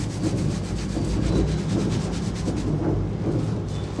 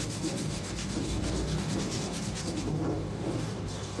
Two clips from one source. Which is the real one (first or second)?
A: first